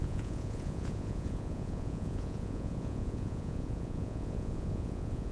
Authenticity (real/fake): fake